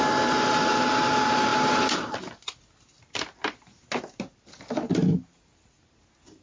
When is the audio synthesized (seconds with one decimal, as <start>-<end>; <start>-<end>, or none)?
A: none